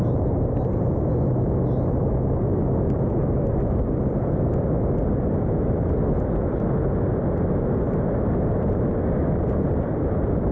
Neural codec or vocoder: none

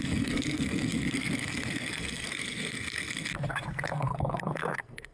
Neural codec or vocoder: codec, SNAC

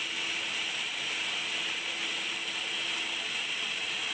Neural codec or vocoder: none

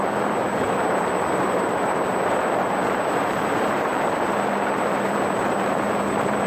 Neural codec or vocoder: vocoder, BigVGAN v2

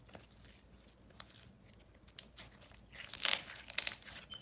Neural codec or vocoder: none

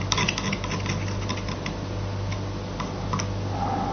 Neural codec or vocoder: none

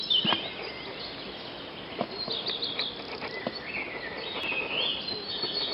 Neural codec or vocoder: none